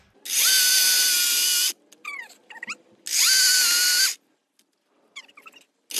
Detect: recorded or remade recorded